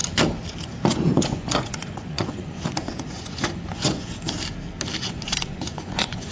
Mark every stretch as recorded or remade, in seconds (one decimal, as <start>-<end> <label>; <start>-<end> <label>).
0.0-0.8 recorded; 0.8-4.1 remade; 4.1-5.0 recorded; 5.0-6.3 remade